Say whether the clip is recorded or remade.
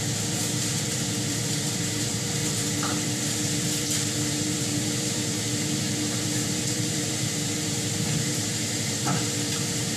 remade